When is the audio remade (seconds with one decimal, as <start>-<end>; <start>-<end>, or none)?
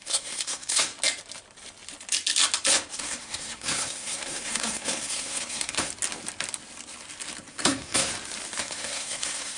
0.0-0.9; 2.9-5.9; 7.5-8.1; 8.6-9.6